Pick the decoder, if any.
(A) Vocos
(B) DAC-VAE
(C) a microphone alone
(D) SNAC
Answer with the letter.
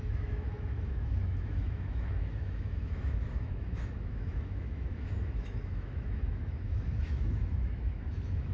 B